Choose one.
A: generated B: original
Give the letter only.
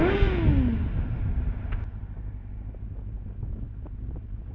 B